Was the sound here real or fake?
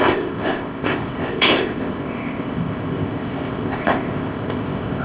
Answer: fake